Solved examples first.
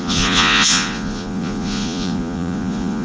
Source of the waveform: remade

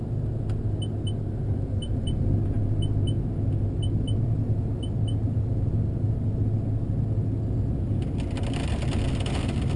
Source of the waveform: recorded